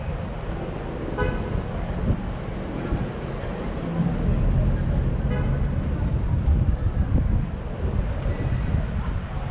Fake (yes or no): no